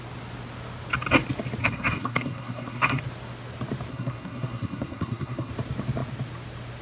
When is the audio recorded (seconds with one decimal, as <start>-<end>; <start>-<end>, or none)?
0.0-1.6; 3.0-3.9; 5.5-6.8